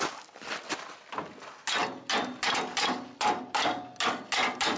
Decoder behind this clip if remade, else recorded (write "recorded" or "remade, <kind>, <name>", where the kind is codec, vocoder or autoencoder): recorded